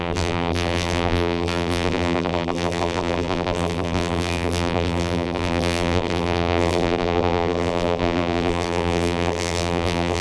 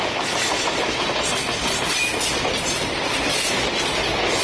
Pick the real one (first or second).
second